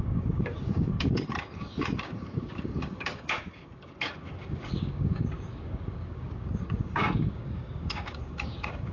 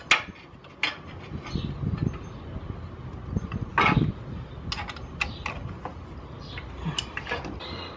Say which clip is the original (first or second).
second